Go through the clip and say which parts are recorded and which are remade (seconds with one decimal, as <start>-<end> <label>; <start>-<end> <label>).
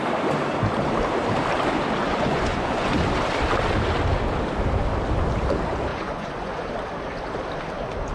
0.0-2.0 recorded; 2.0-2.9 remade; 2.9-5.9 recorded; 5.9-6.7 remade; 6.7-8.1 recorded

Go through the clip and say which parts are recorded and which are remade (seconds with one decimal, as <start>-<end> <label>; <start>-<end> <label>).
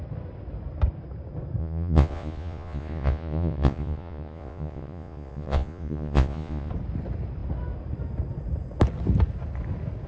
0.0-1.6 recorded; 1.6-6.7 remade; 6.7-10.1 recorded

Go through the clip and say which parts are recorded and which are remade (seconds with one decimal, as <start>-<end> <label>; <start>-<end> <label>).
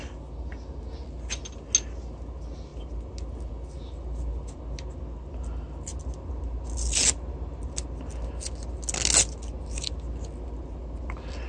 0.0-11.5 recorded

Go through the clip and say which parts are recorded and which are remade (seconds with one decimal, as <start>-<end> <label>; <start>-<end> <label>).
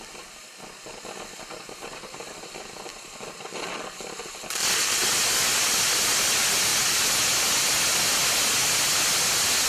0.0-9.7 recorded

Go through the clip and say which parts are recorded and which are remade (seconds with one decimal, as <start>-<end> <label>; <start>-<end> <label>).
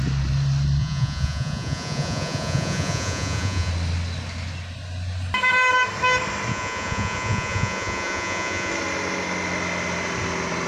0.0-0.8 recorded; 0.8-3.7 remade; 3.7-6.5 recorded; 6.5-8.7 remade; 8.7-10.7 recorded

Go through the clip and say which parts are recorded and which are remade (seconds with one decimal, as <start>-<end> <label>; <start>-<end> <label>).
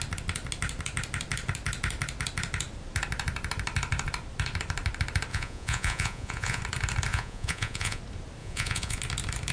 0.0-5.3 recorded; 5.3-6.6 remade; 6.6-7.1 recorded; 7.1-8.0 remade; 8.0-8.4 recorded; 8.4-9.0 remade; 9.0-9.5 recorded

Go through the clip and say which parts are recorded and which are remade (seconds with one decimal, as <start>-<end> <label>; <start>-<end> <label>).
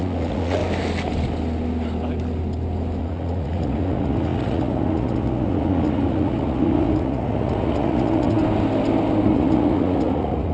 0.0-0.6 remade; 0.6-3.0 recorded; 3.0-8.4 remade; 8.4-9.3 recorded; 9.3-10.5 remade